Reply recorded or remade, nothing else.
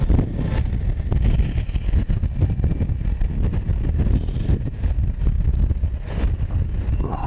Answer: recorded